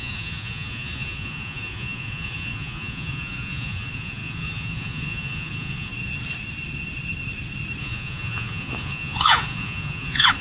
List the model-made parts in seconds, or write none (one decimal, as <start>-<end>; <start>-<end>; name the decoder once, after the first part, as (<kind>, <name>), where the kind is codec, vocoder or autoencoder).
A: 0.0-5.9 (vocoder, Vocos); 7.8-10.4